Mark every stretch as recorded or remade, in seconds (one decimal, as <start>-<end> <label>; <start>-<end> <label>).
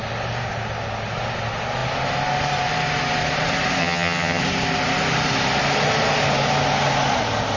0.0-3.8 recorded; 3.8-4.4 remade; 4.4-7.6 recorded